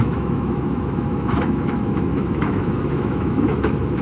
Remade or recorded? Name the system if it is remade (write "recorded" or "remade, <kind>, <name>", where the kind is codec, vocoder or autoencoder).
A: remade, autoencoder, DAC-VAE